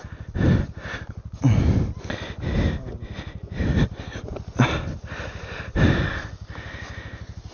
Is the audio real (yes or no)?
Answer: yes